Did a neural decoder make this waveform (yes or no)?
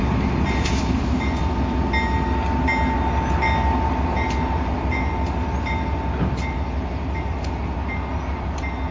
no